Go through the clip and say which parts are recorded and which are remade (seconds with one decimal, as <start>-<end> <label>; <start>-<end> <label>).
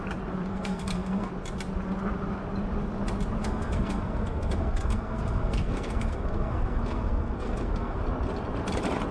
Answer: 0.0-0.5 recorded; 0.5-1.3 remade; 1.3-3.4 recorded; 3.4-8.0 remade; 8.0-9.1 recorded